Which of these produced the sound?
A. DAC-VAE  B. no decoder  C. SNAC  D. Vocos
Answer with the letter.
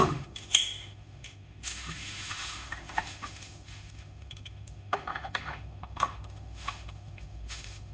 A